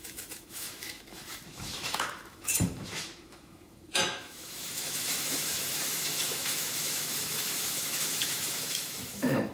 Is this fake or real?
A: fake